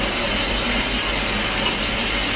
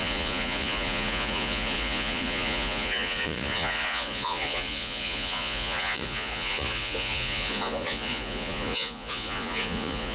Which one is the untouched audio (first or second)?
first